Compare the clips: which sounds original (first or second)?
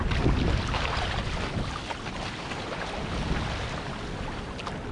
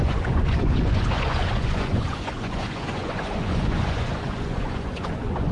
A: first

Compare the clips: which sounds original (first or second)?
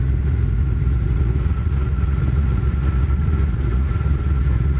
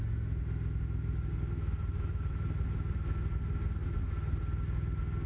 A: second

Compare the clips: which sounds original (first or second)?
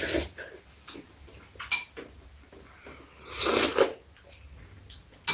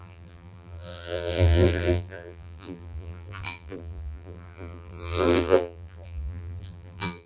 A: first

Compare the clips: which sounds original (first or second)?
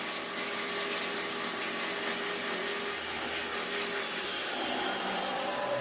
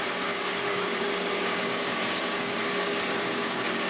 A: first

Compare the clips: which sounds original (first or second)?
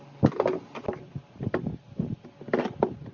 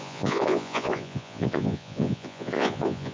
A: first